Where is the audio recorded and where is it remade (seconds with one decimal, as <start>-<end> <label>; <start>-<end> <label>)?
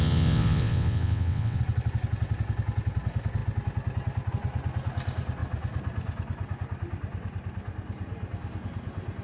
0.0-1.6 remade; 1.6-9.2 recorded